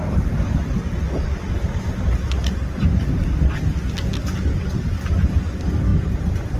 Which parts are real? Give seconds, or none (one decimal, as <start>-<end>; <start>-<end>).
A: 1.0-2.4; 3.2-5.9